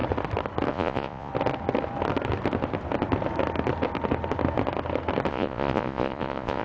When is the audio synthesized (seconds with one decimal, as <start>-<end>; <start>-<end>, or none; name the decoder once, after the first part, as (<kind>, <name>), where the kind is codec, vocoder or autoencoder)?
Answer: 0.7-1.3 (vocoder, Vocos); 5.3-6.6